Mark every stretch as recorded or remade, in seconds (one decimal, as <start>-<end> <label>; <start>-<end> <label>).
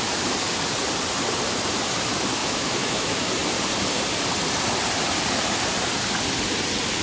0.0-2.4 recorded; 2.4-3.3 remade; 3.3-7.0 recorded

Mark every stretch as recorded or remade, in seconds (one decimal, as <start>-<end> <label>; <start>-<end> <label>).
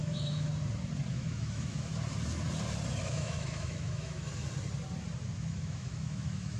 0.0-0.5 remade; 0.5-1.1 recorded; 1.1-1.9 remade; 1.9-3.0 recorded; 3.0-4.4 remade; 4.4-5.3 recorded; 5.3-6.6 remade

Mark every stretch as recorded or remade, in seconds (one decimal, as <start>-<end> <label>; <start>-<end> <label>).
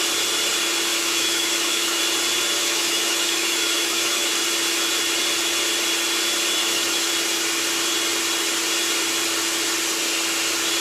0.0-0.9 recorded; 0.9-2.0 remade; 2.0-2.6 recorded; 2.6-4.3 remade; 4.3-6.6 recorded; 6.6-7.1 remade; 7.1-10.8 recorded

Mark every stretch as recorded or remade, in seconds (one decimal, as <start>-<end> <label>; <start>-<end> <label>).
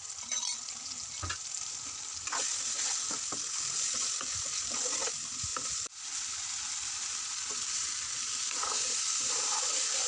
0.0-10.1 recorded